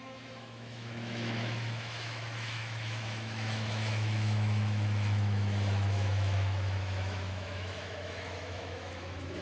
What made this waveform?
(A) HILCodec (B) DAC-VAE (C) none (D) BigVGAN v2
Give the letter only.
B